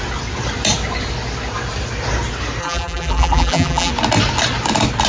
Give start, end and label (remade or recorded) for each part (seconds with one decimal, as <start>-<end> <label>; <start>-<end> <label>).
0.0-2.6 recorded; 2.6-3.9 remade; 3.9-5.1 recorded